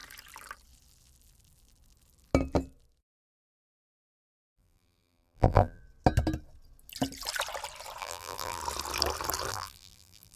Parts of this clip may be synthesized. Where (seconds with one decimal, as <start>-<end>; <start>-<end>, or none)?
3.2-5.8; 8.0-8.6; 9.5-10.4